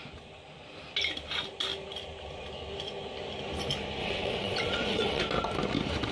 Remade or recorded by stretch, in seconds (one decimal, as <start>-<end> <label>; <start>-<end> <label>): 0.0-4.0 recorded; 4.0-5.2 remade; 5.2-6.1 recorded